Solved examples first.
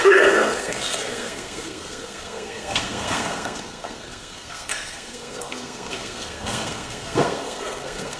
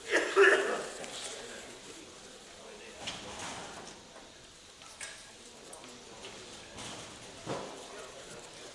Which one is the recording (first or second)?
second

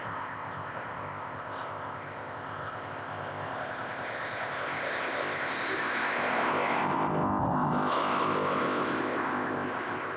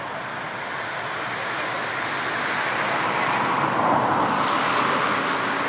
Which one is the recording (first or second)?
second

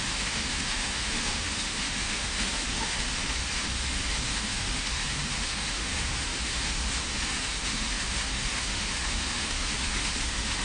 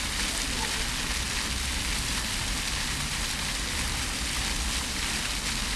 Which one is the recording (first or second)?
second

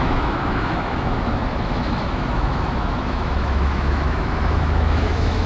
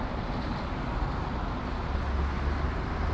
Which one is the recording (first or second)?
second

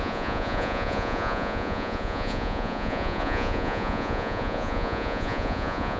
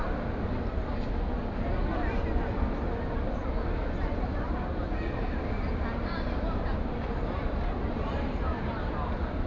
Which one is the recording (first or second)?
second